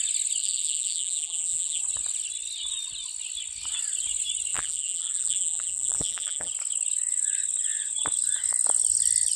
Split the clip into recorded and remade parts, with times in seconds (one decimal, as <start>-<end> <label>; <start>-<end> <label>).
0.0-0.4 recorded; 0.4-1.8 remade; 1.8-4.5 recorded; 4.5-6.5 remade; 6.5-9.4 recorded